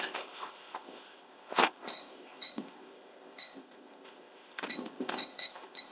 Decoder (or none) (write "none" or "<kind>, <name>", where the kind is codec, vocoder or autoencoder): codec, ZipCodec